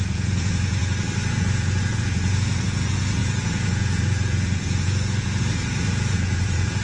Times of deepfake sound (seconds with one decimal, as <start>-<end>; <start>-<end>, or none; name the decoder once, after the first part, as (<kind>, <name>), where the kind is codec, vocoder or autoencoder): 0.0-0.8 (vocoder, Vocos); 1.3-6.8